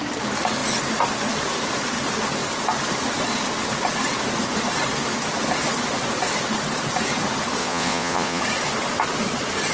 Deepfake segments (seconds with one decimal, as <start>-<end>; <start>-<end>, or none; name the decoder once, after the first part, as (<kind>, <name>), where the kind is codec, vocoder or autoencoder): 7.6-8.4 (vocoder, Vocos)